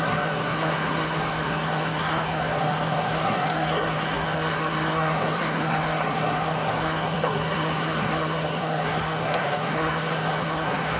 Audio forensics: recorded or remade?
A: remade